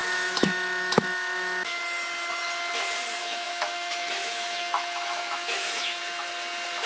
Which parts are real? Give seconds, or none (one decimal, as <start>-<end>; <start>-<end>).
1.8-3.2; 6.0-6.9

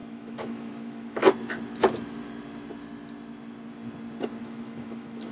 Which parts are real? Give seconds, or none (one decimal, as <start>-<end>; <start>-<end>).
1.2-4.4

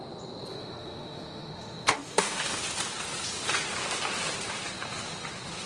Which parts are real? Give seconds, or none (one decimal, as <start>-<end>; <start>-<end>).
0.0-0.5; 2.6-5.7

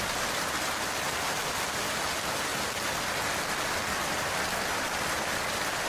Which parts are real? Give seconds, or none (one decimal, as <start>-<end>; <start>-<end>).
0.0-5.9